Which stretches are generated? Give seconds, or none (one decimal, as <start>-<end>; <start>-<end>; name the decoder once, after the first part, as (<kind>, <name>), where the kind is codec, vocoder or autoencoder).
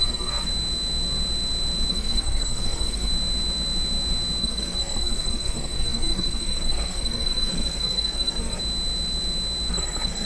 0.0-0.5 (codec, SNAC); 1.9-3.1; 4.4-8.6; 9.7-10.3